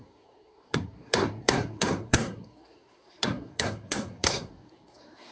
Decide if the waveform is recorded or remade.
remade